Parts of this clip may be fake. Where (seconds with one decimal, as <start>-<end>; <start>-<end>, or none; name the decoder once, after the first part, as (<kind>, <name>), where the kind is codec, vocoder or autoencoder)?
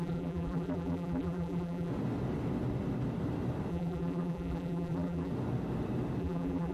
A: 0.0-1.9 (vocoder, BigVGAN v2); 3.7-5.3; 6.2-6.7